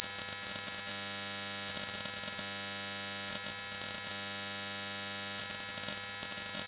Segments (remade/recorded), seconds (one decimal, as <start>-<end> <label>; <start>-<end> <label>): 0.0-0.9 recorded; 0.9-1.7 remade; 1.7-2.4 recorded; 2.4-3.3 remade; 3.3-4.1 recorded; 4.1-5.4 remade; 5.4-6.7 recorded